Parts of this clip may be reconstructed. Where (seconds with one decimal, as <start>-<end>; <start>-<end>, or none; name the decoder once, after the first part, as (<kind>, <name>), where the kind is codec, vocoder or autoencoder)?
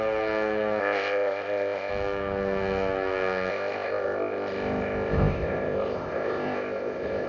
0.8-1.9 (codec, ZipCodec); 3.5-7.3